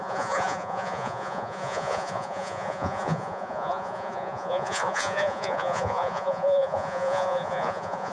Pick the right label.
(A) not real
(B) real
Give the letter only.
A